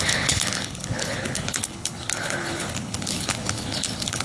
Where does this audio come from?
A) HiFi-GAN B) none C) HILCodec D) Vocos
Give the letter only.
C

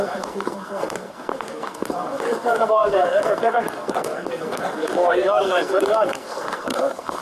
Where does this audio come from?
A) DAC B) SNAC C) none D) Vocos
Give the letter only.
B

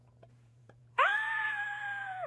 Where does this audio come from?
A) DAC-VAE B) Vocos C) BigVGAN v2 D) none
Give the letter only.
B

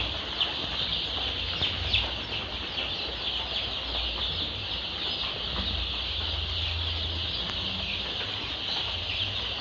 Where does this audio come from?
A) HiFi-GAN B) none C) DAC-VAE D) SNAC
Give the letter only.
B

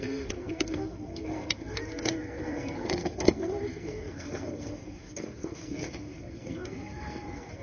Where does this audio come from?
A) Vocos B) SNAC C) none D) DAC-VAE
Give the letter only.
B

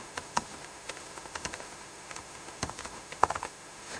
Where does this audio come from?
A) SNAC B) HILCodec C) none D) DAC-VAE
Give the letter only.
D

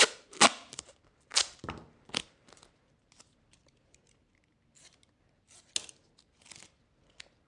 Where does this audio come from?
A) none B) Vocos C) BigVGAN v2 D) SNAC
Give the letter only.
A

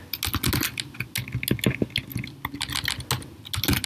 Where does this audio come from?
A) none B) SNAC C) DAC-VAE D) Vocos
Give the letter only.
A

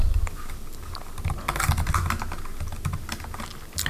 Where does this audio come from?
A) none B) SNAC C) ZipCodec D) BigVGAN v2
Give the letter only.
A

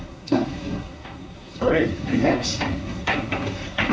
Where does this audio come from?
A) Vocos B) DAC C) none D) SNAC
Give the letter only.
D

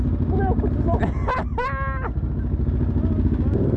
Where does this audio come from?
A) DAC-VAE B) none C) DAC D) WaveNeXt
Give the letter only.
B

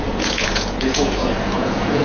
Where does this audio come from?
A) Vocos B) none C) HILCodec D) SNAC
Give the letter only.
A